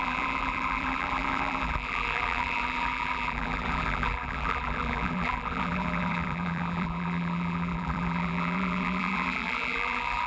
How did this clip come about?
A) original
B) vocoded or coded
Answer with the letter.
B